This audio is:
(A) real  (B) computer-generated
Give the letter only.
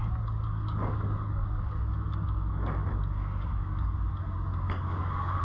B